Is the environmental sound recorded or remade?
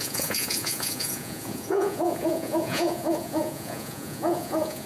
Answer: remade